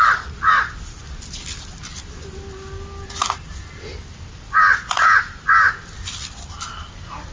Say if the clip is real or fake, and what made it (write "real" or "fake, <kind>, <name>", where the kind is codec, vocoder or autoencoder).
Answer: real